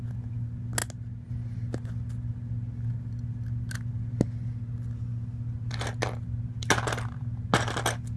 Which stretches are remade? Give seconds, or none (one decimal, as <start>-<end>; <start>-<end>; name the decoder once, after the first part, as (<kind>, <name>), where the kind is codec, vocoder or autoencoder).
none